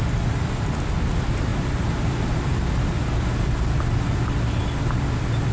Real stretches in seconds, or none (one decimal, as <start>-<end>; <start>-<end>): 0.0-5.5